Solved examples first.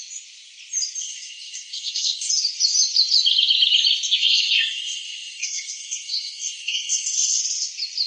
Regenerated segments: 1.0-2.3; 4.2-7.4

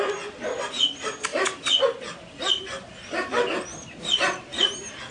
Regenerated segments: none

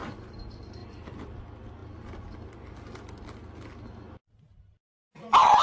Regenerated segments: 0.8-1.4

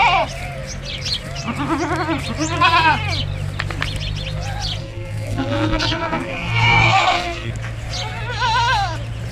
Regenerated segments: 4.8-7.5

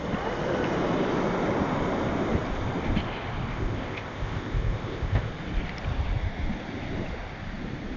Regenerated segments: 3.5-5.3

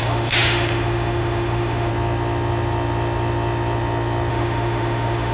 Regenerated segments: 0.0-1.9; 4.3-5.3